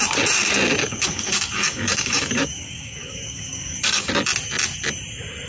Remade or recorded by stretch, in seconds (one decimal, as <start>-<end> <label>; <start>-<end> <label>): 0.0-0.8 recorded; 0.8-4.1 remade; 4.1-5.5 recorded